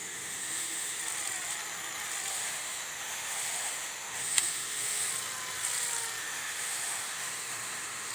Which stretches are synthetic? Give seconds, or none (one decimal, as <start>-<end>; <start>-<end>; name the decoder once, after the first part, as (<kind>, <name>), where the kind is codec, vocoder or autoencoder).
0.0-1.0 (autoencoder, DAC-VAE); 2.3-5.1; 6.2-8.1